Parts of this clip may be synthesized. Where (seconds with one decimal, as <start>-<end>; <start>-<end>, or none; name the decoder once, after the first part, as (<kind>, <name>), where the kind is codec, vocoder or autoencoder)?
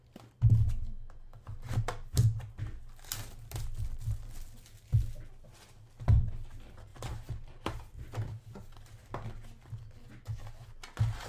none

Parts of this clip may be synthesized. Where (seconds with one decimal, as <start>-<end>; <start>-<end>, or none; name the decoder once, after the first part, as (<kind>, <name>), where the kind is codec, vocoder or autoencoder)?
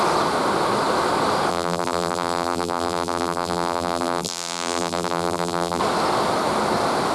1.5-5.8 (vocoder, BigVGAN v2)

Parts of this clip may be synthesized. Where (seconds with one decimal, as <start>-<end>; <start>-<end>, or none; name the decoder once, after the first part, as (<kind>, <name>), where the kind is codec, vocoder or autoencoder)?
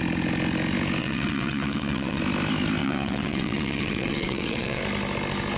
1.0-2.2 (vocoder, WaveNeXt); 2.8-4.8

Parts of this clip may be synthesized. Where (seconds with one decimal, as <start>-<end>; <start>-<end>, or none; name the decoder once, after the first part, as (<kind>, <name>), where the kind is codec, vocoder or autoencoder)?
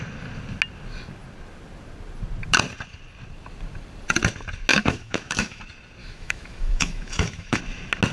4.7-5.6 (autoencoder, DAC-VAE); 6.0-7.6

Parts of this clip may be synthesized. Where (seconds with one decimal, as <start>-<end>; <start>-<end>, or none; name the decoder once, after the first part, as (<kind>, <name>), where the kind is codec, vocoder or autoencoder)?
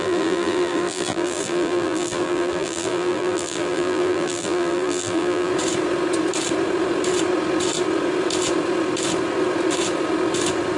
0.0-5.5 (vocoder, BigVGAN v2)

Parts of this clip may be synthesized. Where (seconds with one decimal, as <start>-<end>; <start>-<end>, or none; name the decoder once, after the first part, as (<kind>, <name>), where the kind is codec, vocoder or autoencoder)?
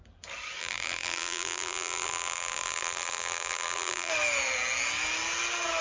0.6-4.1 (vocoder, BigVGAN v2)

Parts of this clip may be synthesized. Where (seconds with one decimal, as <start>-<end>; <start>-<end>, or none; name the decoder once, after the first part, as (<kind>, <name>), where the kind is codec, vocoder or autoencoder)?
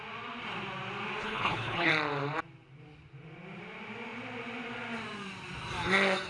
1.2-1.9 (codec, HILCodec)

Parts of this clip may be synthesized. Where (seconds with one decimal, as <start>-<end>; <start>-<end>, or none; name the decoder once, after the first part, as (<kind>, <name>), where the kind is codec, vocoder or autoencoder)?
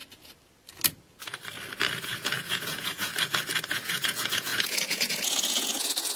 2.0-3.1 (vocoder, Vocos); 3.6-6.2